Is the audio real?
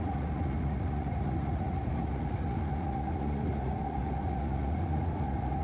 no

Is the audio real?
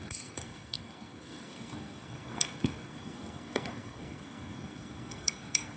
no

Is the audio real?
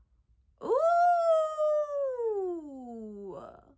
yes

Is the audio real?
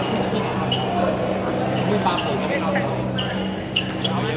yes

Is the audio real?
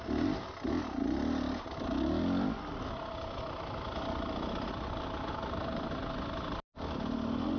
yes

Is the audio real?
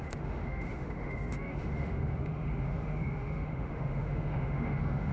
no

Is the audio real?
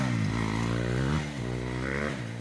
yes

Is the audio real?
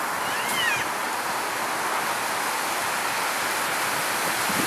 yes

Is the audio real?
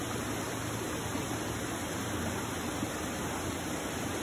no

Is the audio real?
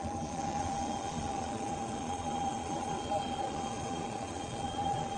no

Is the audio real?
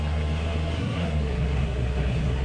no